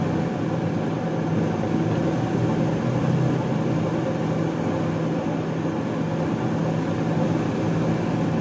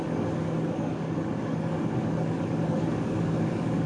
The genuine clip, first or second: first